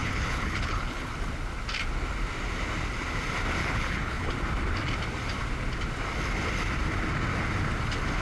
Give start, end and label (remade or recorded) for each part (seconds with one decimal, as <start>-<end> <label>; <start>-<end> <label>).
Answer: 0.0-1.1 remade; 1.1-3.6 recorded; 3.6-4.3 remade; 4.3-8.2 recorded